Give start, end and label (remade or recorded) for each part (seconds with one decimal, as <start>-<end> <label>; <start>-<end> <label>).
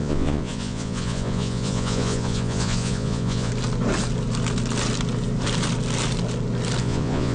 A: 0.0-3.5 remade; 3.5-6.8 recorded; 6.8-7.3 remade